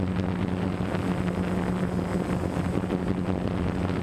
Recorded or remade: recorded